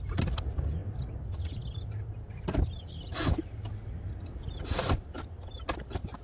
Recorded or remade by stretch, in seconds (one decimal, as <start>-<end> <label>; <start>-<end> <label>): 0.0-6.2 recorded